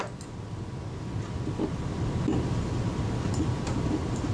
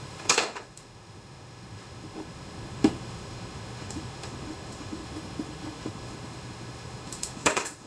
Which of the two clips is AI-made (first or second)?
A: second